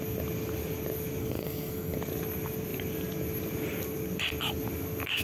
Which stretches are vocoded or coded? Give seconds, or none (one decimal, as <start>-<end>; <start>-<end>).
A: 1.2-2.0